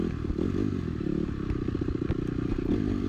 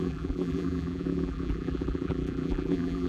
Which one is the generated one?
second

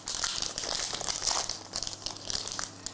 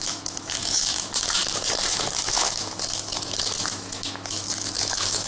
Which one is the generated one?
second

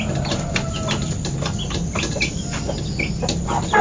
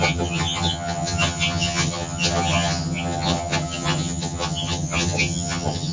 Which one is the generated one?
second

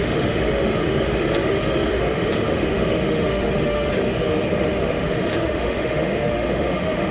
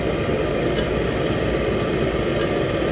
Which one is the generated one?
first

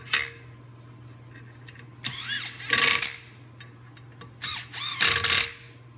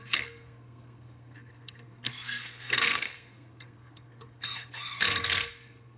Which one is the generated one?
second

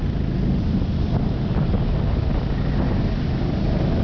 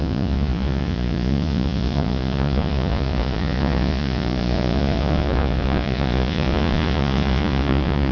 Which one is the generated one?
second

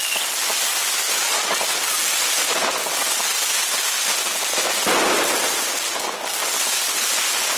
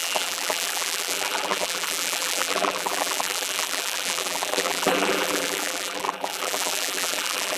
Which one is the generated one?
second